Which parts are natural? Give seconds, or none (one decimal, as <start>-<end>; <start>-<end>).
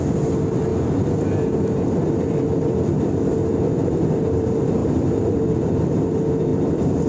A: 0.0-4.8; 6.0-6.5